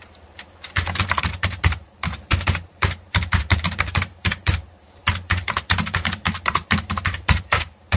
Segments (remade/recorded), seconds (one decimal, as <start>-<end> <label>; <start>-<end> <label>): 0.0-8.0 remade